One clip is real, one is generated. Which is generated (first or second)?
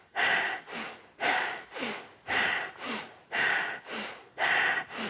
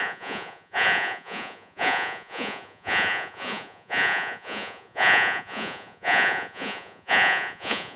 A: second